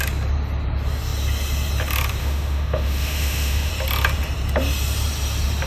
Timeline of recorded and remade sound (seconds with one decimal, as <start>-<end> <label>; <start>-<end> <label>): 0.0-2.2 recorded; 2.2-3.7 remade; 3.7-5.7 recorded